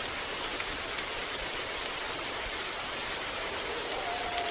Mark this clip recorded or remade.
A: recorded